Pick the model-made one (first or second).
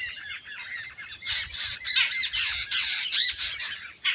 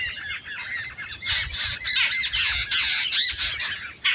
first